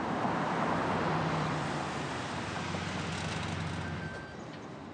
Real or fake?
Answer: real